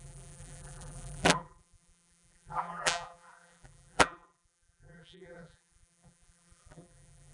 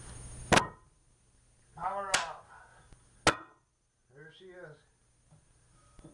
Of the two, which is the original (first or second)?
second